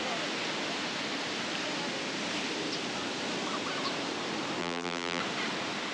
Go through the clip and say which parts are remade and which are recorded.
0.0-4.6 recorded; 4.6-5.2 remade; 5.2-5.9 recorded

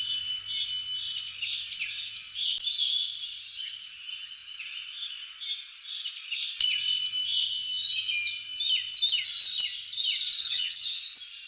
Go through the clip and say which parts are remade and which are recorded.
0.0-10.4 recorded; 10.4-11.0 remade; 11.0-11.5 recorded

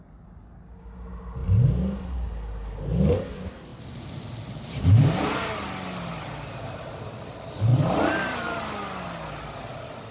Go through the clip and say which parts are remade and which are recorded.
0.0-3.7 recorded; 3.7-7.2 remade; 7.2-7.7 recorded; 7.7-8.6 remade; 8.6-10.1 recorded